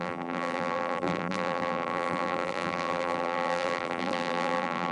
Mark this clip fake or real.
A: fake